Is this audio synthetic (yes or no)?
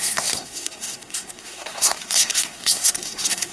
yes